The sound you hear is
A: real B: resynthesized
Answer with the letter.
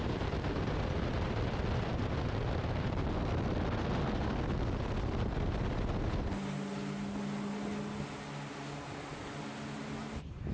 A